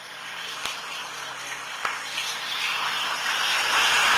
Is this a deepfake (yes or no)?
no